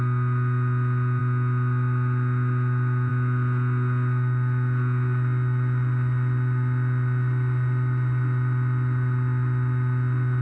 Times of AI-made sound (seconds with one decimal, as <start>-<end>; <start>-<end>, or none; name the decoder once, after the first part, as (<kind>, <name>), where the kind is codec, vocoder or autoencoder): none